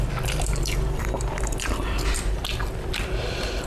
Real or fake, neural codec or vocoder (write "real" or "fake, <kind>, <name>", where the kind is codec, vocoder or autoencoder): fake, vocoder, BigVGAN v2